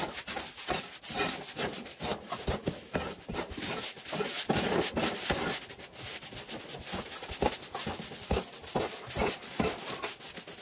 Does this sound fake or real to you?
real